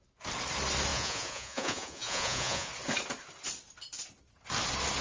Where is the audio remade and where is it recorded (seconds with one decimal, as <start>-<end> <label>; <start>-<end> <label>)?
0.0-0.9 recorded; 0.9-2.7 remade; 2.7-5.0 recorded